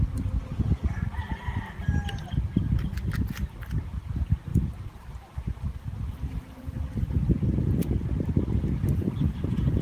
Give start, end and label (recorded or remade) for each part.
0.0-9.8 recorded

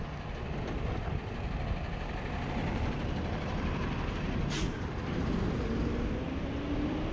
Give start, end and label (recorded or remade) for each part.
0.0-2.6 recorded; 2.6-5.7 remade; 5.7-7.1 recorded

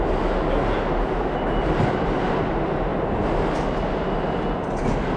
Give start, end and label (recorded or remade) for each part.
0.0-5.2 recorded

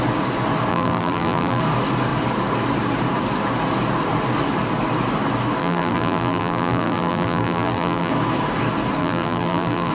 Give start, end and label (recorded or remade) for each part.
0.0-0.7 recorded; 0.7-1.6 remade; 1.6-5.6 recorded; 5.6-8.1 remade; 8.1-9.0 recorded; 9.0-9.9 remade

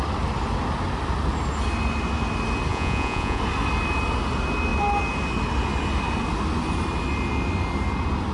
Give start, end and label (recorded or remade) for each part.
0.0-2.7 recorded; 2.7-3.4 remade; 3.4-8.3 recorded